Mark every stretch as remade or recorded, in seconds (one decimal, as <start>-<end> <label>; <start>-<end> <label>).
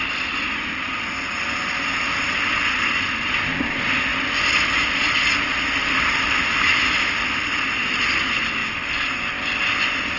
0.0-10.2 recorded